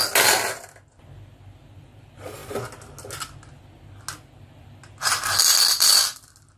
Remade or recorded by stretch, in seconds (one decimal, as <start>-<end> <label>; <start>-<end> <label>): 0.0-6.6 recorded